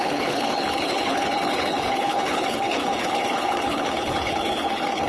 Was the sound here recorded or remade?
remade